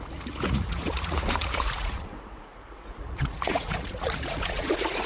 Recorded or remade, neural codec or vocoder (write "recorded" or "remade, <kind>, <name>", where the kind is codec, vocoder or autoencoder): remade, vocoder, Vocos